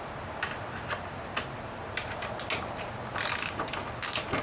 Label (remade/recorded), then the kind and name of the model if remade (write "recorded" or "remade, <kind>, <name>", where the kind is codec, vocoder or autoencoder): recorded